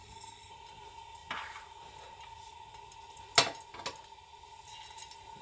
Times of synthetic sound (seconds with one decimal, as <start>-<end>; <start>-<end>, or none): 0.0-0.5